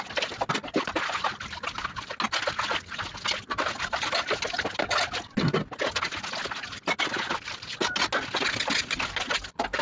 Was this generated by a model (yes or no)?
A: no